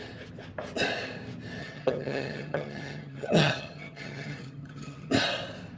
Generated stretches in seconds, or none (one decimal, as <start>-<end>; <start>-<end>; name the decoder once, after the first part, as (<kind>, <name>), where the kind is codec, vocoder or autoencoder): 1.6-5.1 (vocoder, HiFi-GAN)